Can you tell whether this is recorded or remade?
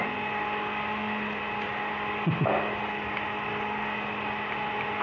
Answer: recorded